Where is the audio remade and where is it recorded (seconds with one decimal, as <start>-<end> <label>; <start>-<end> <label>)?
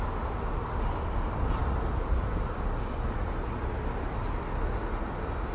0.0-5.5 recorded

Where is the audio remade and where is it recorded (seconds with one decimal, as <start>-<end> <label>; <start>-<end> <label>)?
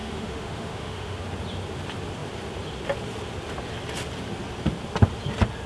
0.0-1.2 remade; 1.2-5.7 recorded